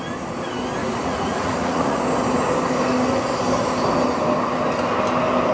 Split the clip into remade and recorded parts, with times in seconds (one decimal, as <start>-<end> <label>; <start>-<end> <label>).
0.0-0.8 recorded; 0.8-2.0 remade; 2.0-5.5 recorded